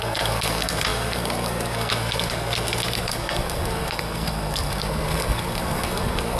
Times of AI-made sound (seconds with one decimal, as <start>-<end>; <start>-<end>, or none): 0.0-6.4